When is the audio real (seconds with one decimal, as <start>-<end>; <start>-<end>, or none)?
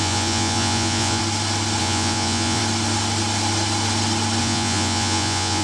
1.2-1.8; 2.6-4.4